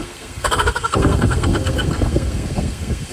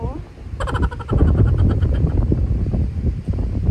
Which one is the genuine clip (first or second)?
second